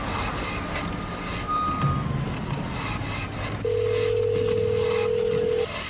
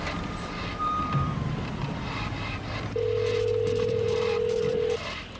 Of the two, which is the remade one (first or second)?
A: second